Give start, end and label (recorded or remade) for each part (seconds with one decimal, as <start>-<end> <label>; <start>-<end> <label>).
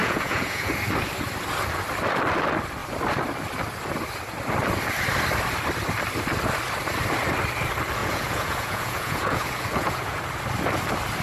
0.0-0.7 remade; 0.7-8.0 recorded; 8.0-10.2 remade; 10.2-11.2 recorded